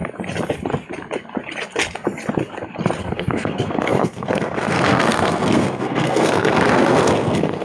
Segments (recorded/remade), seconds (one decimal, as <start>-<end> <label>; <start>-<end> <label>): 0.0-3.0 recorded; 3.0-7.6 remade

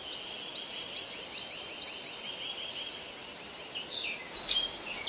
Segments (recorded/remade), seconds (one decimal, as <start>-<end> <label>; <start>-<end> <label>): 0.0-5.1 recorded

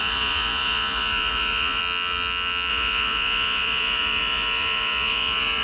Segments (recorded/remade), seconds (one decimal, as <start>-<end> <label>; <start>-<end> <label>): 0.0-1.8 remade; 1.8-2.7 recorded; 2.7-5.6 remade

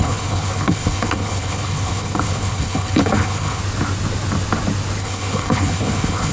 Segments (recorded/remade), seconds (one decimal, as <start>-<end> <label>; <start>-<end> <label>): 0.0-3.6 remade; 3.6-5.0 recorded; 5.0-6.3 remade